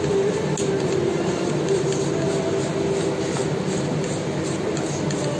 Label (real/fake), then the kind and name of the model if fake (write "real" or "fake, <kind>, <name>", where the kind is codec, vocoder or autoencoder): real